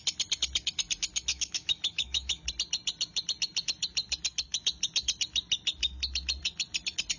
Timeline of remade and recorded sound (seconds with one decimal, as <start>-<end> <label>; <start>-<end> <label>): 0.0-1.3 recorded; 1.3-2.4 remade; 2.4-7.2 recorded